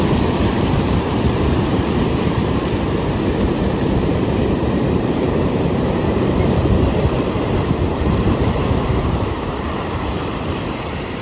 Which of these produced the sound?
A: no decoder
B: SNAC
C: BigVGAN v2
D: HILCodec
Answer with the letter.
C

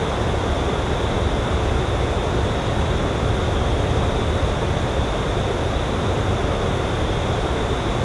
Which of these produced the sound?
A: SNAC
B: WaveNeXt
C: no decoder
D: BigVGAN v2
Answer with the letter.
C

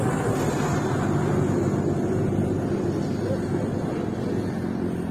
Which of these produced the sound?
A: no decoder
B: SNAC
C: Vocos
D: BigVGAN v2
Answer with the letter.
A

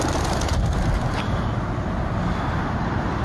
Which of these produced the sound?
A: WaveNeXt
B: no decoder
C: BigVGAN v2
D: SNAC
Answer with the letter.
B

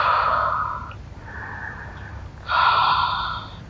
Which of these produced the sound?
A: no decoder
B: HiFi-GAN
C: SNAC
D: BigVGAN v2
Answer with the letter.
D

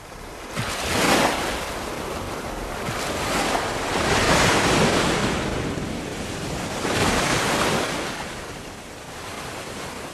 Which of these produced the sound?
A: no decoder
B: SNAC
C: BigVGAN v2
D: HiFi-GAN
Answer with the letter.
C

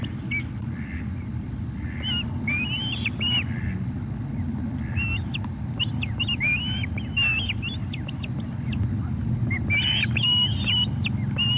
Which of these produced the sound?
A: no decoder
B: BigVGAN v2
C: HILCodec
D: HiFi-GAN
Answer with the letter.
A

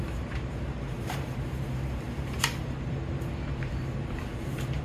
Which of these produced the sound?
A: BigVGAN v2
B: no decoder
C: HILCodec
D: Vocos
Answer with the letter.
A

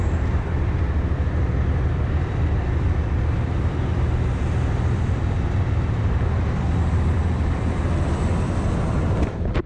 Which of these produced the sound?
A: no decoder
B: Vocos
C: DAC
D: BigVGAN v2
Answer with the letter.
D